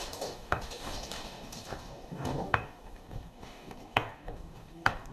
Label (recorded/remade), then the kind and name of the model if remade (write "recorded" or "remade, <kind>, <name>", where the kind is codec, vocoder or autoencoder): remade, codec, DAC